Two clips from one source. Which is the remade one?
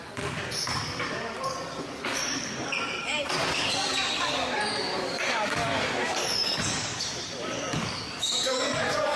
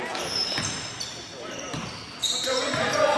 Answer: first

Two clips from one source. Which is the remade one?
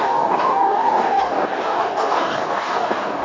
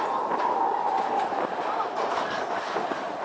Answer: first